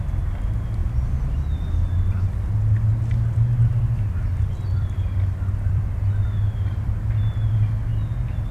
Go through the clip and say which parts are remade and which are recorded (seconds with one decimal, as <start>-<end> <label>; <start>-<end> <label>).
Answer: 0.0-4.3 recorded; 4.3-7.0 remade; 7.0-8.5 recorded